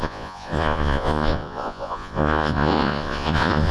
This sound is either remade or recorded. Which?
remade